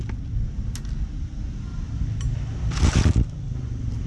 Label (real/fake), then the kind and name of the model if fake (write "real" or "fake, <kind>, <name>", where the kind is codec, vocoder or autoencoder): real